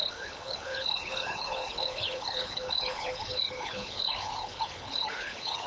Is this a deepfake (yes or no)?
yes